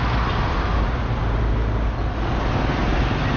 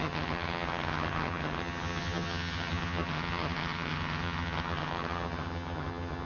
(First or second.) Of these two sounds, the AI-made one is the second